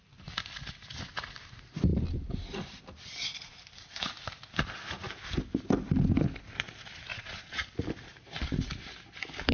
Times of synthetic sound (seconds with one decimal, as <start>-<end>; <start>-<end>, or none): 7.1-7.6